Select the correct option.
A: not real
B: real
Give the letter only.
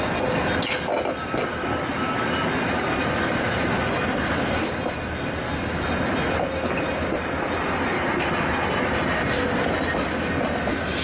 B